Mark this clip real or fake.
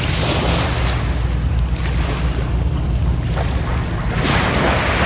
real